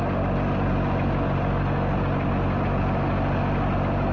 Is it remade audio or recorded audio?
recorded